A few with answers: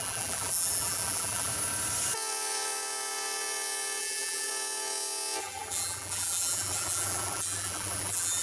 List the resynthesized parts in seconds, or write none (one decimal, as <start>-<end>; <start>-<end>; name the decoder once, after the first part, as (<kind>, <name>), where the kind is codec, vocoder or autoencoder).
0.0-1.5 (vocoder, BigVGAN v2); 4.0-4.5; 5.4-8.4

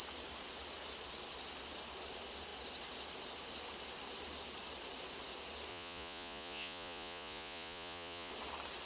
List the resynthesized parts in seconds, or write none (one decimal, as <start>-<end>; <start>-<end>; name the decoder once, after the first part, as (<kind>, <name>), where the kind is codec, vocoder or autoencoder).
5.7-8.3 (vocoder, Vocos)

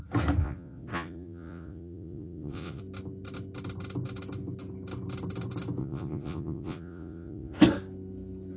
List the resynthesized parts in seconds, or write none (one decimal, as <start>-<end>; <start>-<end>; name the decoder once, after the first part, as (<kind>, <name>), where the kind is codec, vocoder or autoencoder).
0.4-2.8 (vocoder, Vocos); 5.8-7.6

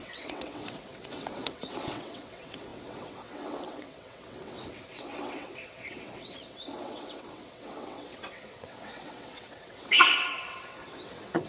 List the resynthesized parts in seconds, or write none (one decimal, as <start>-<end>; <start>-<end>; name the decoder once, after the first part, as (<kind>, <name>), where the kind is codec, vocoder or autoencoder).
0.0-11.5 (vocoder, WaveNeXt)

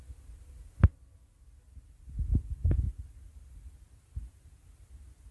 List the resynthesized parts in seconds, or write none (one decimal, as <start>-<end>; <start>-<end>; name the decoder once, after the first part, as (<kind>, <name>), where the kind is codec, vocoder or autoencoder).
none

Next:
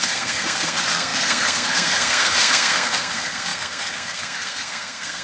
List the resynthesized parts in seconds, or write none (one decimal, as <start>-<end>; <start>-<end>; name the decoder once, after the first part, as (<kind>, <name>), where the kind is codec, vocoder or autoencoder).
0.0-5.2 (codec, SNAC)